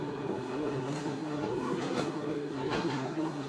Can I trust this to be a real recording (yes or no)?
no